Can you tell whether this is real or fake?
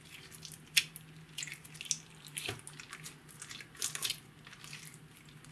real